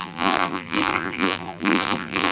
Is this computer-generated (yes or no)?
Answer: yes